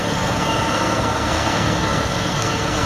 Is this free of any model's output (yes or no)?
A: no